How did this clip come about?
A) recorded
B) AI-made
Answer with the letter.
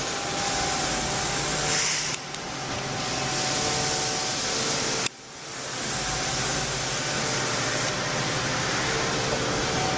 A